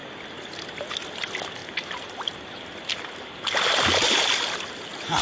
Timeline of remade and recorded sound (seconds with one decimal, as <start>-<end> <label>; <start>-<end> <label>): 0.0-1.6 recorded; 1.6-3.5 remade; 3.5-5.2 recorded